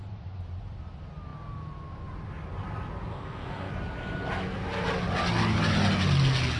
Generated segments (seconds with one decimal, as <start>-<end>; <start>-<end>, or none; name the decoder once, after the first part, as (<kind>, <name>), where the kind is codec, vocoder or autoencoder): 3.1-3.7 (codec, SNAC)